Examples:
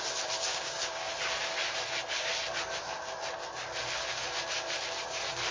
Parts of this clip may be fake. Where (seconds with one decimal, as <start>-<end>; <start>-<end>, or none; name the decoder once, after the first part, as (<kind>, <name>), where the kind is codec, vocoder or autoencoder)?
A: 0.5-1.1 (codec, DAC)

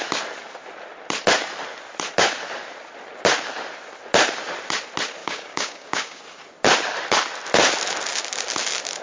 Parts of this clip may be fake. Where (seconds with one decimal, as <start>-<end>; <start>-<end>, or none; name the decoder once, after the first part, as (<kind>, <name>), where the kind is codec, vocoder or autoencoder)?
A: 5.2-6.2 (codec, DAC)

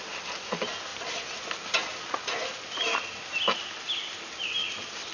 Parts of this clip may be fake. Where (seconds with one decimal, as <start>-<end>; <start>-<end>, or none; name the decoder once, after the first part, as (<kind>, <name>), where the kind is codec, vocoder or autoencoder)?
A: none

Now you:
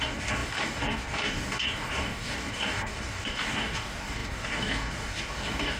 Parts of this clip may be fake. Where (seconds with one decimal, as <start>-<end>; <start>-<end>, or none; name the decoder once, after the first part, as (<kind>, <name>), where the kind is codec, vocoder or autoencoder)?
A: 0.0-5.8 (codec, DAC)

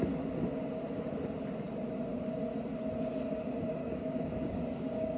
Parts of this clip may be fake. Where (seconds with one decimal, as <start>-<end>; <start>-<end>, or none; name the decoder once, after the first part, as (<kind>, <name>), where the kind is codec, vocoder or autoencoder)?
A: 3.8-5.2 (codec, DAC)

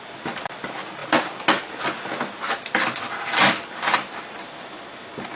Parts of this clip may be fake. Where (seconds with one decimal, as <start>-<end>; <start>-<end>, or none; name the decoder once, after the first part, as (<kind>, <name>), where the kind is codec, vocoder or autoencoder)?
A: none

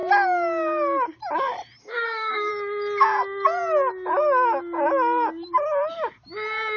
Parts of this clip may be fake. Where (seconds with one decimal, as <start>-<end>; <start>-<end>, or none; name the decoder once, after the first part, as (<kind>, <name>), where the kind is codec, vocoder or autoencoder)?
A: 1.8-2.5 (codec, DAC)

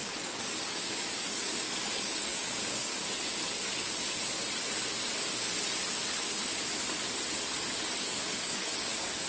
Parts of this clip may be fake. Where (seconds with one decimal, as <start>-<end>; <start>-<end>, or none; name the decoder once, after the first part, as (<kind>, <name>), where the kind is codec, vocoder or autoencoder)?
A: 0.0-2.9 (codec, DAC); 8.0-9.3